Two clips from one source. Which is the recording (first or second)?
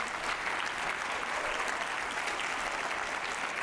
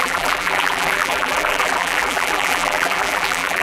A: first